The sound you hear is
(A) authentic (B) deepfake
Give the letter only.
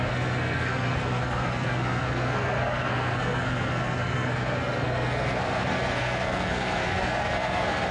B